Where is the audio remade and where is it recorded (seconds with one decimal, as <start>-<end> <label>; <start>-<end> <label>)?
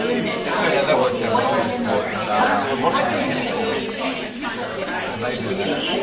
0.0-6.0 recorded